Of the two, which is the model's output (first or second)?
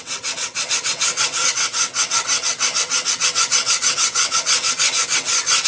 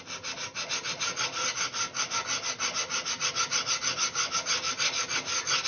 first